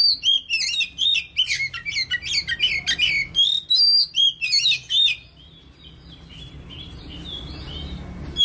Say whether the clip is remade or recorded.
recorded